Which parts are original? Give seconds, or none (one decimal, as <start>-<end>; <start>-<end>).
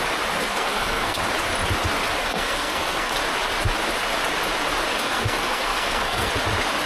0.0-0.4; 1.2-2.2; 3.1-4.9; 6.3-6.9